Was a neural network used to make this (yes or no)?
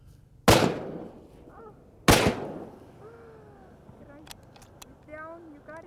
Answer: no